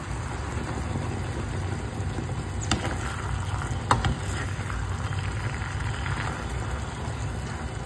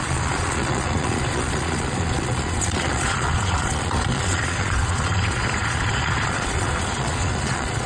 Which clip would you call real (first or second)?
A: first